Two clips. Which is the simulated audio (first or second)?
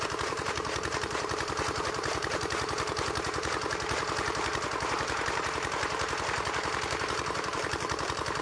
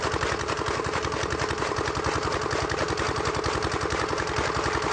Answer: first